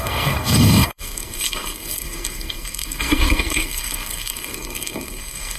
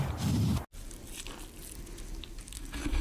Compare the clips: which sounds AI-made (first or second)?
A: first